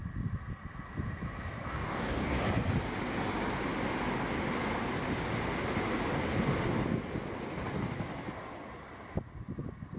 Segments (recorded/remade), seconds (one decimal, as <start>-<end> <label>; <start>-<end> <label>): 0.0-1.7 recorded; 1.7-2.4 remade; 2.4-10.0 recorded